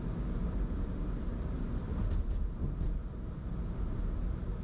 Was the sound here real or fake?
real